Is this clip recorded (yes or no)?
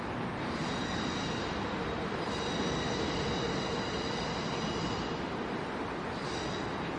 yes